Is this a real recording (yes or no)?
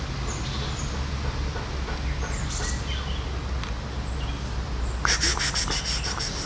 yes